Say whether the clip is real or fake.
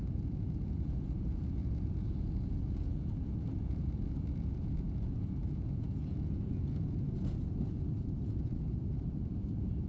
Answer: fake